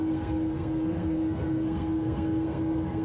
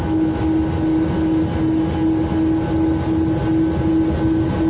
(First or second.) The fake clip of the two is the first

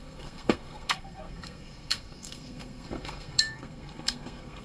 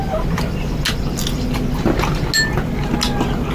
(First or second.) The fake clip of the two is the first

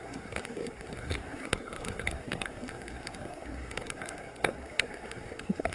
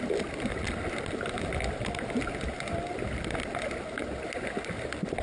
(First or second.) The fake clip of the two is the first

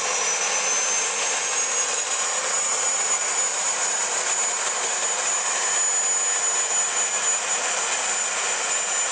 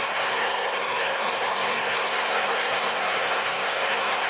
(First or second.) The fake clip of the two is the second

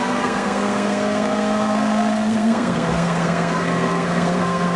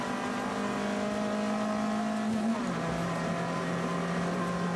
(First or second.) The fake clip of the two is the first